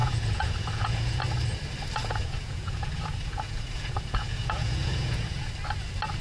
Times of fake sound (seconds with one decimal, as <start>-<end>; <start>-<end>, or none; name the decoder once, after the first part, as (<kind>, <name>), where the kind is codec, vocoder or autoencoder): 0.0-1.2 (vocoder, Vocos); 2.0-5.5